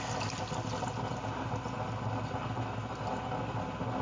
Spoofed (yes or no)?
no